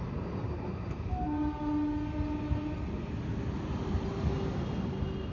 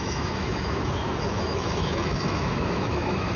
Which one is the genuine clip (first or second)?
first